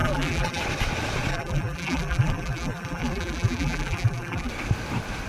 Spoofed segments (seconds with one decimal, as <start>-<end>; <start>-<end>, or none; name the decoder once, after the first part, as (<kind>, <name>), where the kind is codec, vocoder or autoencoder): 0.0-0.6 (vocoder, BigVGAN v2); 1.3-4.5